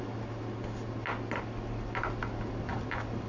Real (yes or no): yes